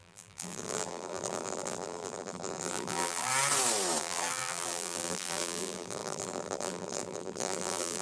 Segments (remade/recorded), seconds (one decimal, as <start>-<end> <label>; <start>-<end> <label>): 0.0-3.3 remade; 3.3-4.0 recorded; 4.0-8.0 remade